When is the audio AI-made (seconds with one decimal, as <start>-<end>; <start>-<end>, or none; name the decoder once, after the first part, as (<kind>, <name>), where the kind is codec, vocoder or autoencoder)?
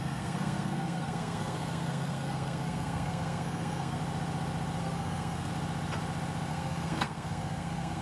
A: 0.0-4.0 (codec, SNAC); 4.8-5.5; 6.5-8.0